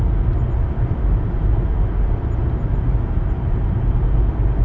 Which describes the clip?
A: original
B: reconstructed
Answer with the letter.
A